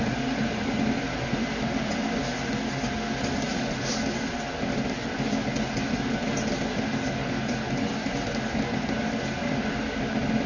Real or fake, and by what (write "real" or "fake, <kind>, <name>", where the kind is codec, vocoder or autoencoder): real